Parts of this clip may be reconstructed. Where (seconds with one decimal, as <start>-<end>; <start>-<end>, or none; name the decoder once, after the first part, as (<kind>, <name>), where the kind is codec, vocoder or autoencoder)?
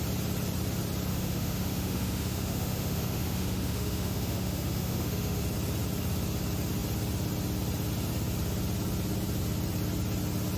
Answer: 1.1-5.4 (autoencoder, DAC-VAE)